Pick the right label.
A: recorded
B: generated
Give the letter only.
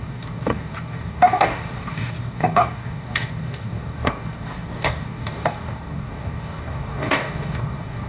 B